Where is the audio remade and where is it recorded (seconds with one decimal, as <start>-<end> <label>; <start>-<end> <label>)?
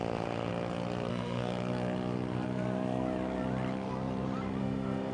0.0-0.5 remade; 0.5-1.1 recorded; 1.1-1.5 remade; 1.5-4.6 recorded; 4.6-5.1 remade